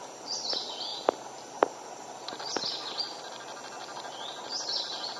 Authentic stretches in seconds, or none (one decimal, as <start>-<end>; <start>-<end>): 0.0-5.2